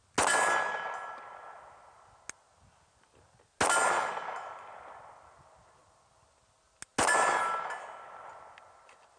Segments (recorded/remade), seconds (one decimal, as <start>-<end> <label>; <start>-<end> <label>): 0.0-9.2 recorded